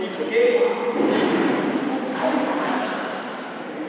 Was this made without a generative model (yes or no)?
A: yes